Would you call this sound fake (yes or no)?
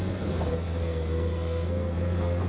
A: yes